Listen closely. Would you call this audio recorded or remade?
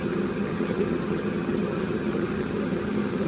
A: remade